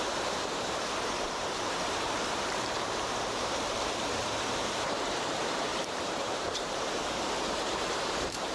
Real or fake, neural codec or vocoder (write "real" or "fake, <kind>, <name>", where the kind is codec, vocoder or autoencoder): fake, vocoder, BigVGAN v2